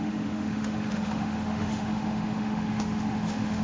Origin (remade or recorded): remade